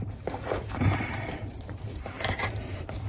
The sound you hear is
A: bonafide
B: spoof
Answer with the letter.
B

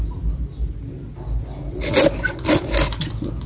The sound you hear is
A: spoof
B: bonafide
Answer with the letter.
B